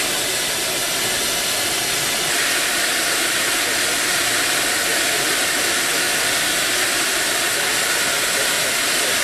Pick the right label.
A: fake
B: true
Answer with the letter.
B